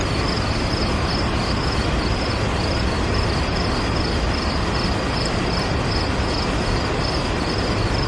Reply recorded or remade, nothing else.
recorded